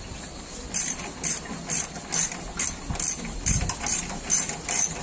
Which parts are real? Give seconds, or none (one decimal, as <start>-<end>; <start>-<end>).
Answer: 0.0-5.0